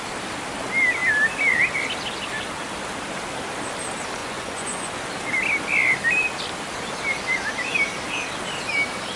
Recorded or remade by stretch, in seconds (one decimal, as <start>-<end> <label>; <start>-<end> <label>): 0.0-4.2 recorded; 4.2-4.9 remade; 4.9-9.2 recorded